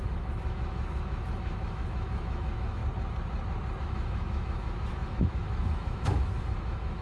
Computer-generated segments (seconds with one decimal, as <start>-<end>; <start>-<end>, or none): 0.0-2.8; 3.8-7.0